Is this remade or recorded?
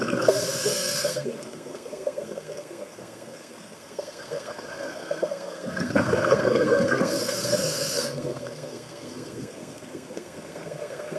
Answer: remade